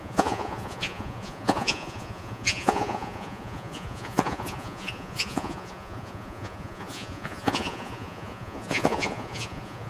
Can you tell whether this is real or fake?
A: fake